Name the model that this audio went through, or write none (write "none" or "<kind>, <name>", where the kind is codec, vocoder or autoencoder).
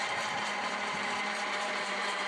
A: vocoder, BigVGAN v2